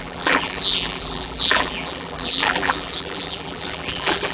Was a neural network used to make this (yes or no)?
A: yes